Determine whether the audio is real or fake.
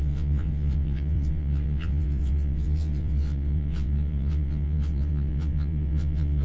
fake